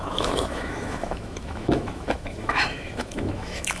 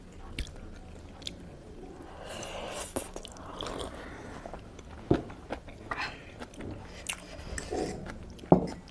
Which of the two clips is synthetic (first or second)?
first